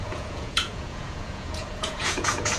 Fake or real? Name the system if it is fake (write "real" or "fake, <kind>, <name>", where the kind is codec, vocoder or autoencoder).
fake, vocoder, Vocos